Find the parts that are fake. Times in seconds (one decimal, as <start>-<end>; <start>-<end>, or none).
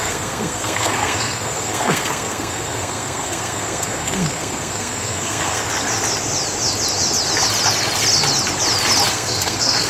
0.0-5.6; 9.1-9.9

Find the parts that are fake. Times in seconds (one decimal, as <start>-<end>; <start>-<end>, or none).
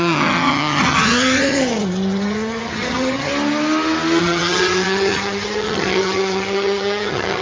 0.0-3.3; 4.2-7.4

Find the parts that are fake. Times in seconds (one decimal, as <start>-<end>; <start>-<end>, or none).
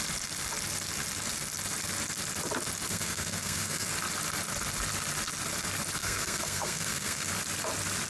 2.9-3.9; 6.0-7.3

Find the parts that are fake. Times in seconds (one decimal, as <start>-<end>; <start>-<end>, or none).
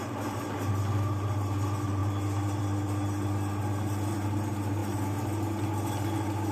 none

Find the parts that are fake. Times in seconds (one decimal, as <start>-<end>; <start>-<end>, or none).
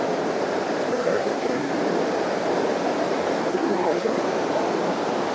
0.9-1.7; 3.5-4.2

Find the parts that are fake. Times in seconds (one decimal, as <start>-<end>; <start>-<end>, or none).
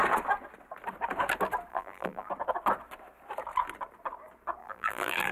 1.7-2.3; 4.6-5.3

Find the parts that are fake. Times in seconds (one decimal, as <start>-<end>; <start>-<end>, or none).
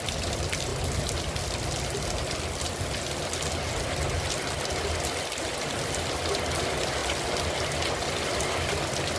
none